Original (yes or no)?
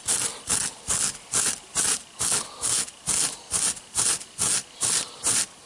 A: yes